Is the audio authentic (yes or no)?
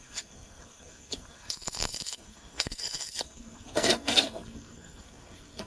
no